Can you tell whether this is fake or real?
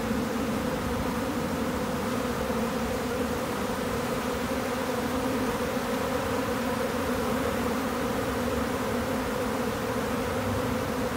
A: fake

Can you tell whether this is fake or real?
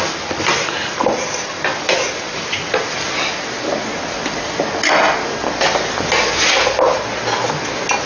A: real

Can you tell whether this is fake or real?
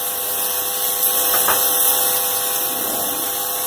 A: real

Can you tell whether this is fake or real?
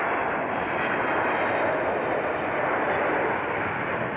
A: real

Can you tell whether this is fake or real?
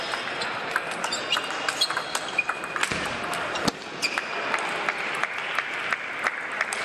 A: real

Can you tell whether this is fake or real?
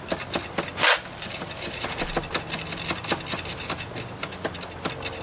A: real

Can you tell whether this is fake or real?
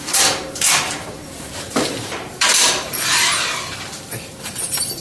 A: fake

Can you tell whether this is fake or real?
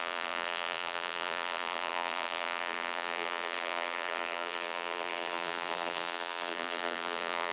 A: fake